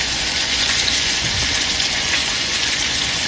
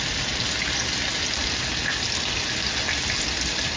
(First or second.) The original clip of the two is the second